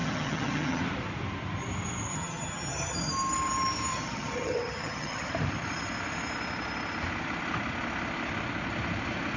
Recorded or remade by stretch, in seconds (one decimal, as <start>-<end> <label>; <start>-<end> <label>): 0.0-0.8 remade; 0.8-2.1 recorded; 2.1-3.1 remade; 3.1-3.9 recorded; 3.9-5.3 remade; 5.3-9.4 recorded